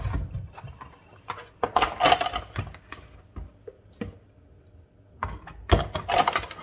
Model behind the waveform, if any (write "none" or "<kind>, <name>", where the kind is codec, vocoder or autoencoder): none